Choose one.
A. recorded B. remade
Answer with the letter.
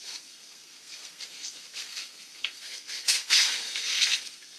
B